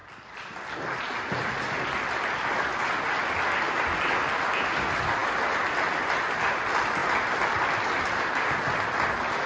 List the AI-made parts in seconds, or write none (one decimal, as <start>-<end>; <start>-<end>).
none